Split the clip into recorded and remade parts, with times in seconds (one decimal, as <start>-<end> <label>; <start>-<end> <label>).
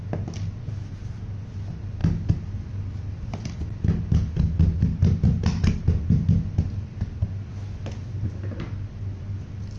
0.0-9.8 recorded